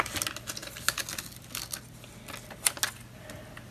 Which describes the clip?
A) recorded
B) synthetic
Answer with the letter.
A